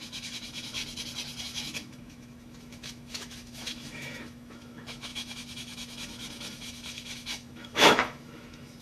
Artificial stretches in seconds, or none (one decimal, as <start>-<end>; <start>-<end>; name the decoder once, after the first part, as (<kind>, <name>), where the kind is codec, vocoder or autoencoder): 0.0-0.8 (autoencoder, DAC-VAE); 1.4-8.8